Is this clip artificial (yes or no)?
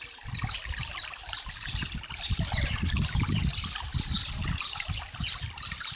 no